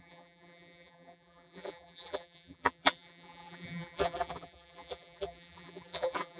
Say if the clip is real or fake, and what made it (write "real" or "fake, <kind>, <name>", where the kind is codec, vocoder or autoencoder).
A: fake, vocoder, BigVGAN v2